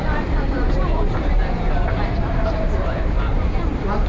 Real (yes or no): no